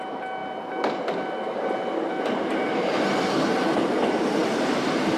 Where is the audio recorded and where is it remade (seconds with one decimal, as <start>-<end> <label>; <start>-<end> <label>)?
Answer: 0.0-5.2 recorded